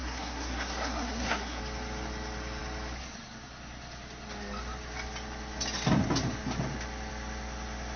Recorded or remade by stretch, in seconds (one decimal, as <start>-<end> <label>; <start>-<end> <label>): 0.0-1.6 remade; 1.6-8.0 recorded